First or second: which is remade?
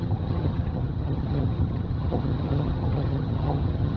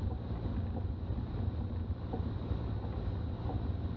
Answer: first